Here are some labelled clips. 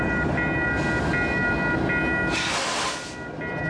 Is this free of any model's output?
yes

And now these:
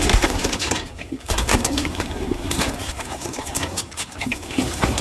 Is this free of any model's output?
no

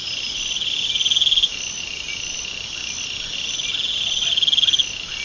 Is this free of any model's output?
yes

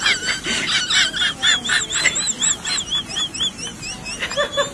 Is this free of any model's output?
yes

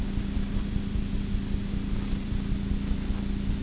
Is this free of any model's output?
yes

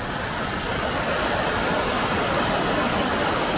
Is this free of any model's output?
yes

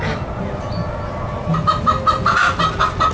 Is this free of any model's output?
yes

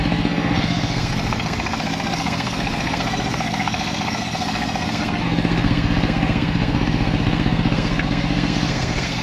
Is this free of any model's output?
no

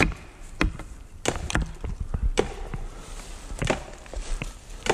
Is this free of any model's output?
yes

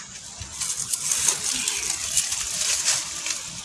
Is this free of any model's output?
yes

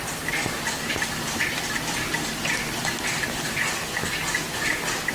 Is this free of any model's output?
yes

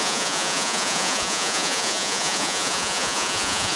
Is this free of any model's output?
no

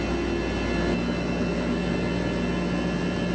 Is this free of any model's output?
yes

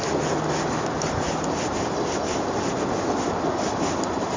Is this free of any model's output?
yes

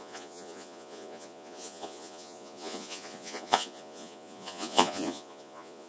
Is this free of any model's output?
no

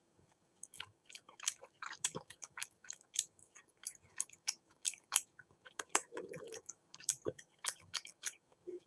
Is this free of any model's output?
no